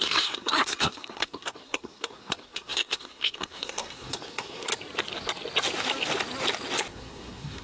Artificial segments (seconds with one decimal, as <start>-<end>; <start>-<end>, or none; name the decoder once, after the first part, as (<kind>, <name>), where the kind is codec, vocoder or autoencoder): 0.0-4.7 (codec, SNAC); 6.9-7.6